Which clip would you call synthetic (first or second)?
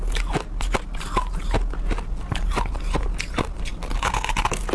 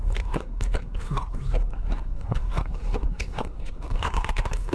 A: second